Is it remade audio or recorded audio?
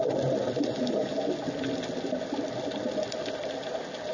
recorded